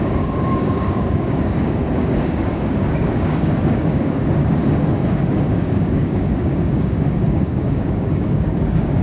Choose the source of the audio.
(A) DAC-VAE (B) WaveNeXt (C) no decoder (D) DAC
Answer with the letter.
D